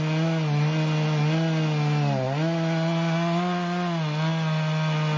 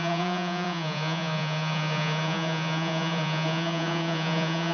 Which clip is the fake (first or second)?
second